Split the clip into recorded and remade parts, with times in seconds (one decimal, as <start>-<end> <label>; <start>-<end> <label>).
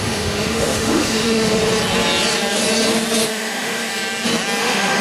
0.0-1.6 remade; 1.6-3.3 recorded; 3.3-3.9 remade; 3.9-4.6 recorded; 4.6-5.0 remade